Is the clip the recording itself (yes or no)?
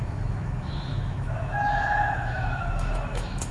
no